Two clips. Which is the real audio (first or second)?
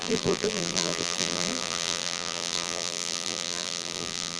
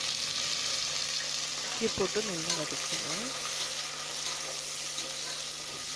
second